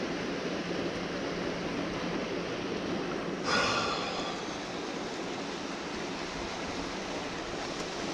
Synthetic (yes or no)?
no